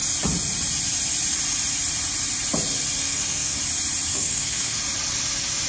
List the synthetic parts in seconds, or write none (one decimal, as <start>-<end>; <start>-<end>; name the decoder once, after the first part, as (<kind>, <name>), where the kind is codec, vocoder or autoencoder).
3.0-3.6 (codec, SNAC); 4.1-4.8